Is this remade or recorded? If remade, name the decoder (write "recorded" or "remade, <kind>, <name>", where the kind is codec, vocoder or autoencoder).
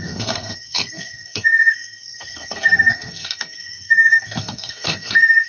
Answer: remade, codec, SNAC